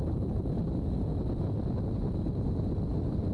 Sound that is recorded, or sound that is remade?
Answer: recorded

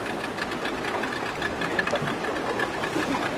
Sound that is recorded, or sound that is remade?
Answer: recorded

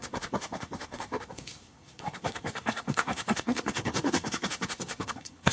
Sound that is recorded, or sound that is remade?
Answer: remade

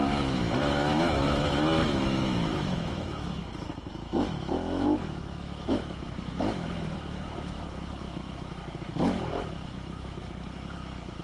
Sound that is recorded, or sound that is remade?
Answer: remade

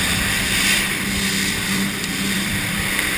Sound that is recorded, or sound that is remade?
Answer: remade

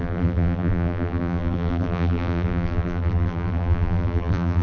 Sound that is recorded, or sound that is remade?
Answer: remade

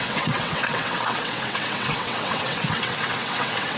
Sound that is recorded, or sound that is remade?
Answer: remade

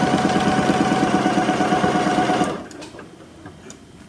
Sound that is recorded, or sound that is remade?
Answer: recorded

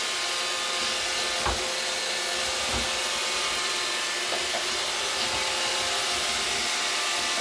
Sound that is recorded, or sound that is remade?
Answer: recorded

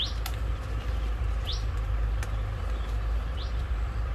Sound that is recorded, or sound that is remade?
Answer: remade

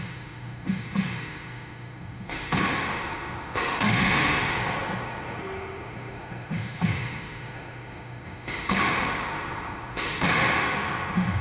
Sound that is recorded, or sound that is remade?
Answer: remade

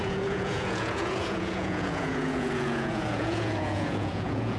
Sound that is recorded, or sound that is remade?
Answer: remade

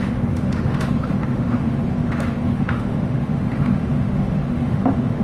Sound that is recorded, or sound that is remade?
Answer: remade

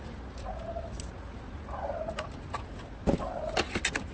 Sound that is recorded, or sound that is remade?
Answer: recorded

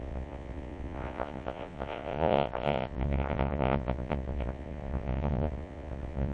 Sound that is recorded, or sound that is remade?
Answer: remade